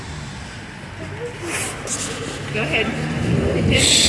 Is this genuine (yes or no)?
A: yes